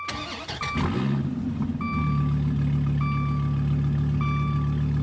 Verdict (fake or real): real